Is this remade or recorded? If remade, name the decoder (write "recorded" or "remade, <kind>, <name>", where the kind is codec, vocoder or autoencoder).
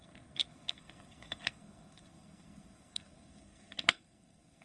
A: remade, codec, SNAC